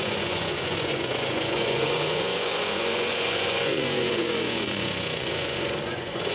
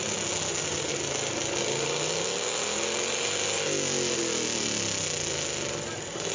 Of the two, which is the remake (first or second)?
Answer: first